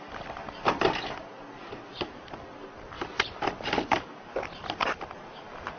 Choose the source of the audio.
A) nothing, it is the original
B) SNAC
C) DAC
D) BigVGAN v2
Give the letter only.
A